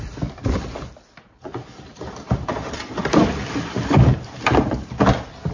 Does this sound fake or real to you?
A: fake